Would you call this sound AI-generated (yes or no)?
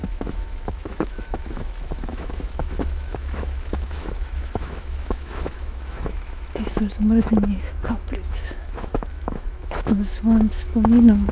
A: yes